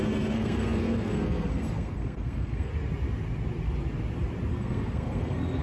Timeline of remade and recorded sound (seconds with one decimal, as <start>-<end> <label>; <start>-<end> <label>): 0.0-2.7 remade; 2.7-4.5 recorded; 4.5-5.6 remade